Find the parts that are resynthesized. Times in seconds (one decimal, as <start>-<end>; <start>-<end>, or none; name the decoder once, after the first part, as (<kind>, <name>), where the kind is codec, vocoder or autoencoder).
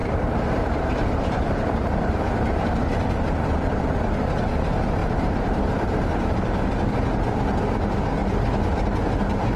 0.0-2.6 (vocoder, BigVGAN v2); 5.0-6.0